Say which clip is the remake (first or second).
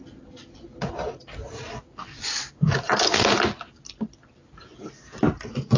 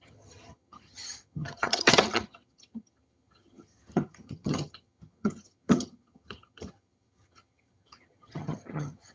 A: second